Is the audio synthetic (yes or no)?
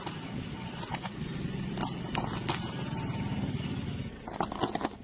no